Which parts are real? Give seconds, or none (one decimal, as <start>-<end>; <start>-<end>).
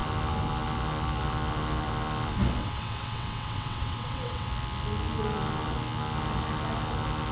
0.0-2.6; 4.5-7.3